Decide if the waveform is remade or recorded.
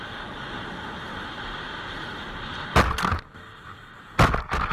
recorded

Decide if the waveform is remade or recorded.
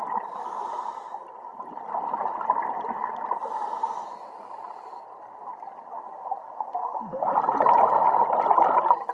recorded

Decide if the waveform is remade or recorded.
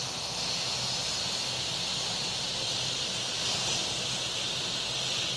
recorded